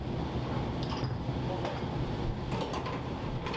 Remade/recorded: recorded